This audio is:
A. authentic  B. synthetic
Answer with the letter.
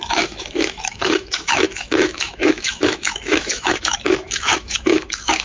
B